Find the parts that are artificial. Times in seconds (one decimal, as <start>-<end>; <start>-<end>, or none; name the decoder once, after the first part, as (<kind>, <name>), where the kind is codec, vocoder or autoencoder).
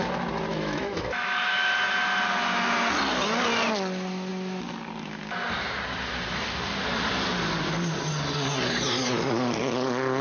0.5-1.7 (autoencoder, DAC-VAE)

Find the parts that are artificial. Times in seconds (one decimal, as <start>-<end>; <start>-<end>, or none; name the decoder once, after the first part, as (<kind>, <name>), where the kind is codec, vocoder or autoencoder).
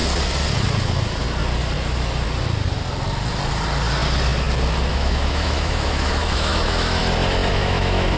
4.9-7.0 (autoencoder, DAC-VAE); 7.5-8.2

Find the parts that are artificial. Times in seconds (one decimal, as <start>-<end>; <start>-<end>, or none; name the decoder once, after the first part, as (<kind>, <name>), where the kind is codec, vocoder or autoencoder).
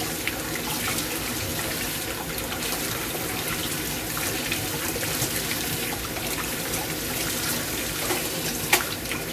none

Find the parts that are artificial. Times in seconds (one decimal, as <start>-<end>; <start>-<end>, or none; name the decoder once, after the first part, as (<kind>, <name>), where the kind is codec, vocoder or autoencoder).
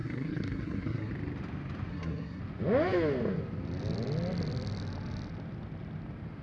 0.0-1.1 (codec, SNAC); 1.9-2.4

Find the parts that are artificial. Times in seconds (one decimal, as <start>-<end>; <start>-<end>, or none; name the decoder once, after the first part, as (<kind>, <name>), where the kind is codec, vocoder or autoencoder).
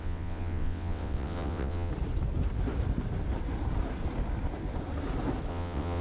0.0-1.9 (vocoder, WaveNeXt); 5.5-6.0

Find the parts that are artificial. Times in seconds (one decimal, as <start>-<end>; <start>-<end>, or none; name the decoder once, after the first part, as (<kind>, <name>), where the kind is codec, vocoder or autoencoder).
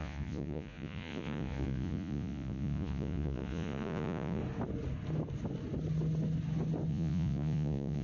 0.0-4.4 (vocoder, Vocos); 6.9-8.0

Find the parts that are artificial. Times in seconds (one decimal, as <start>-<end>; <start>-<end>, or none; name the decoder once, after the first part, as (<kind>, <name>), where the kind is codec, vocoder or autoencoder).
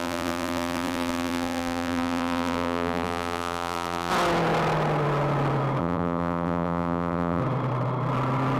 0.0-4.1 (vocoder, BigVGAN v2); 5.8-7.4